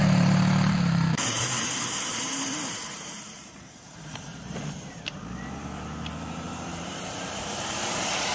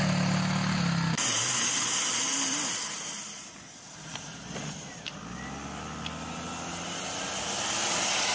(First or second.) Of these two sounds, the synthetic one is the first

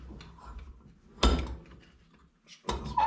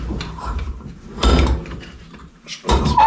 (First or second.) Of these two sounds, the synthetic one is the second